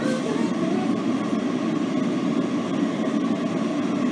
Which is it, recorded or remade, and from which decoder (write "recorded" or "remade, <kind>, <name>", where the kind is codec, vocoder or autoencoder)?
recorded